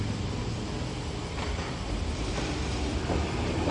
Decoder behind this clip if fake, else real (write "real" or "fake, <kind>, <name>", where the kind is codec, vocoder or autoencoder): real